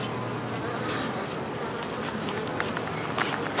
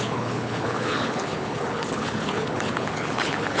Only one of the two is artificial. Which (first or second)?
second